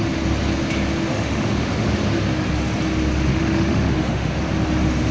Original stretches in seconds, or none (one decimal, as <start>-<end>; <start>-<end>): 0.0-1.1; 1.9-3.3; 4.4-5.1